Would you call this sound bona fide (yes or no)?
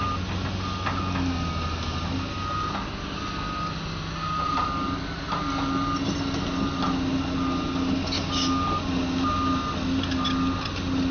yes